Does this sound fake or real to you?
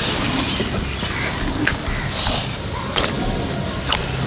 real